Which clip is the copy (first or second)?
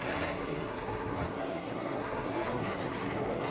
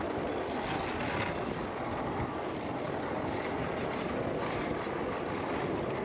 first